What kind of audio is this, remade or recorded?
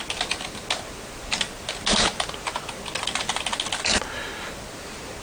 recorded